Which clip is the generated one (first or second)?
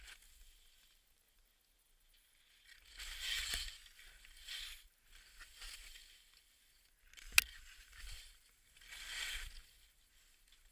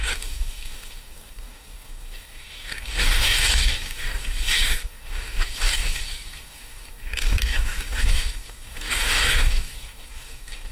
second